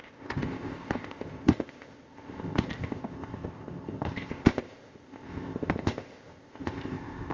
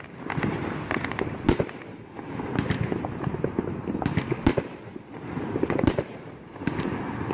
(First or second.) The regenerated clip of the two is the first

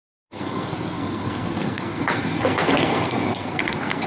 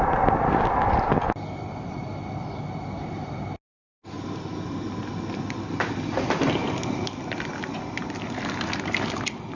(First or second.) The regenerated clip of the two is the first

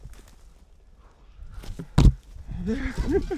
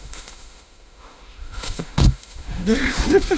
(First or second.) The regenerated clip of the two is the second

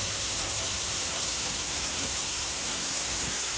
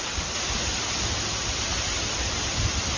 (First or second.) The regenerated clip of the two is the first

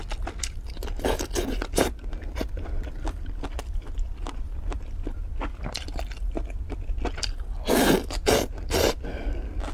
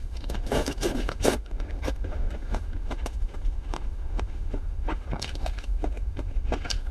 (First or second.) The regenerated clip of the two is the second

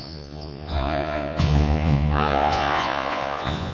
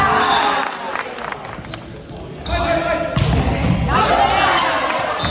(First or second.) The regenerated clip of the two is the first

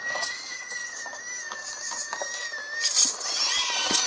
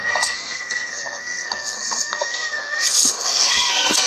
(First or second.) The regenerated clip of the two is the second